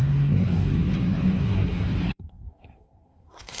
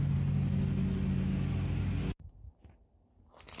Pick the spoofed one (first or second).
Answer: first